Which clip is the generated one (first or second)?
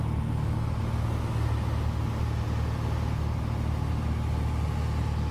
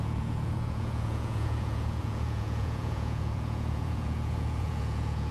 second